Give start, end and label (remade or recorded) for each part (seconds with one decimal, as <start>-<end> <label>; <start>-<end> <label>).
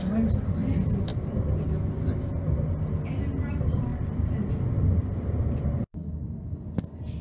0.0-7.2 recorded